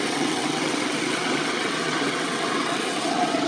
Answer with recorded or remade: remade